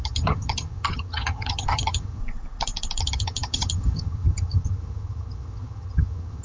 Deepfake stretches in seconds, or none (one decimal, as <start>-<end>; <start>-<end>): 0.0-2.2; 3.0-6.4